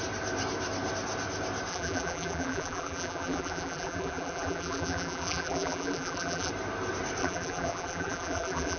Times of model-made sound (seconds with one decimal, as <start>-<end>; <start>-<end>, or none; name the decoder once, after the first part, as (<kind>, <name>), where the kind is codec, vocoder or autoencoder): 1.7-6.5 (vocoder, BigVGAN v2); 7.2-8.8